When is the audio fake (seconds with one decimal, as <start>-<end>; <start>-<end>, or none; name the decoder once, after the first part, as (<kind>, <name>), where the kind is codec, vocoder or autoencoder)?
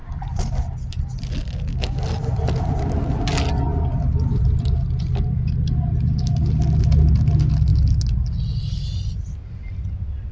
none